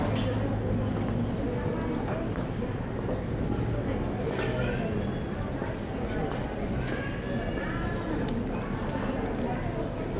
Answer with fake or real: real